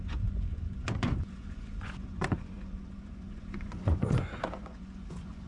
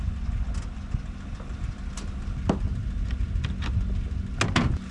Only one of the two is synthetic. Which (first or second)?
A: first